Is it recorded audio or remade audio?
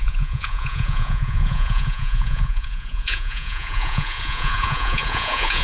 remade